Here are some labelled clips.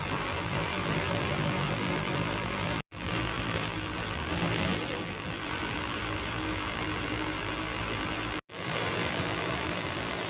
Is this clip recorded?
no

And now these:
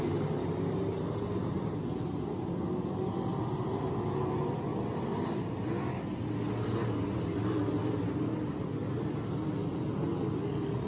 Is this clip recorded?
yes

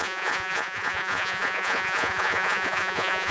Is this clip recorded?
no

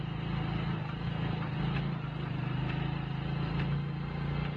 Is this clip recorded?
yes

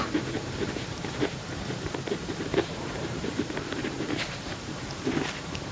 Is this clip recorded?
no